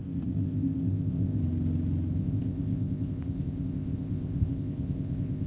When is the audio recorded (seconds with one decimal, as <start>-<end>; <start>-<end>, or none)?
1.4-2.2